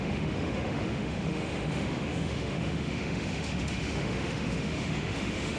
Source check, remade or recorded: remade